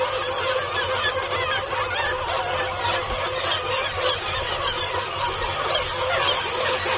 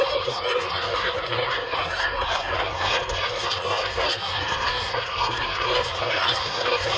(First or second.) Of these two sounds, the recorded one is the first